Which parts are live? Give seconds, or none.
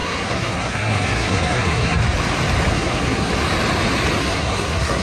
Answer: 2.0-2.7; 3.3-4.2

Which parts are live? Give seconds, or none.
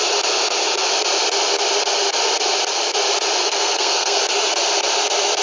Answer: 0.0-3.4; 4.2-5.4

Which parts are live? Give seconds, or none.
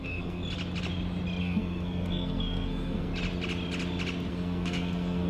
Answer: 0.4-1.4; 3.1-4.3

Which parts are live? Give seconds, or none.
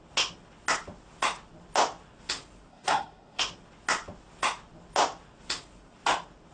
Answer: 0.0-2.7; 3.4-6.5